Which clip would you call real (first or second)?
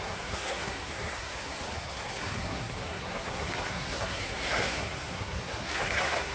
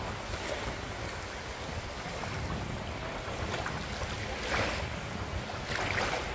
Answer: second